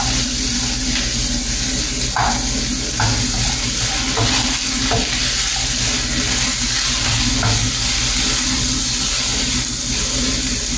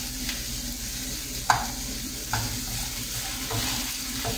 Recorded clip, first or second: first